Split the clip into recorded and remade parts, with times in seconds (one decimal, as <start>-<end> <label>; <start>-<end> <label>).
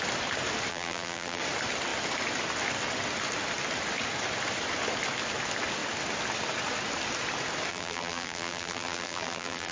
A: 0.0-0.7 recorded; 0.7-1.4 remade; 1.4-7.7 recorded; 7.7-9.7 remade